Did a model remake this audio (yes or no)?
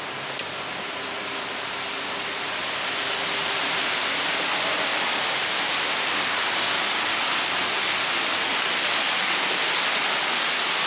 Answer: no